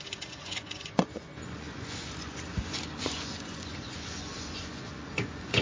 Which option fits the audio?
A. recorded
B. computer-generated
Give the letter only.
B